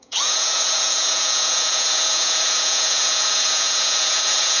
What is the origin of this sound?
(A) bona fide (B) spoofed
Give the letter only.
B